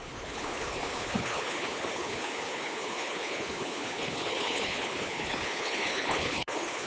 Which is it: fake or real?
fake